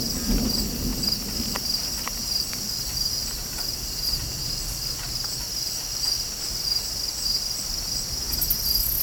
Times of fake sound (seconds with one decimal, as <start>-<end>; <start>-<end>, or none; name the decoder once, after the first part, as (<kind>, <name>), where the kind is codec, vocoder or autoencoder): none